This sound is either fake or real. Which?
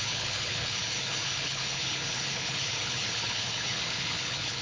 fake